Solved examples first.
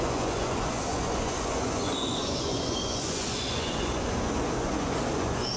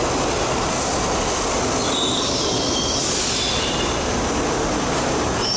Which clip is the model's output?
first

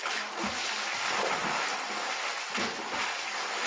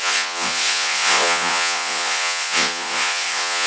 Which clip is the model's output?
second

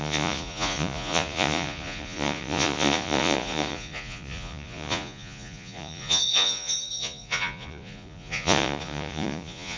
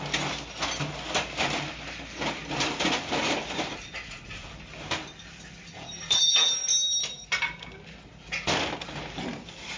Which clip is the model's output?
first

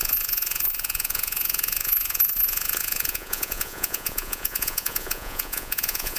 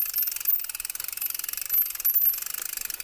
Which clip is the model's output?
first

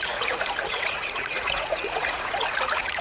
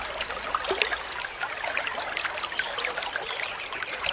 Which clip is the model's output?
first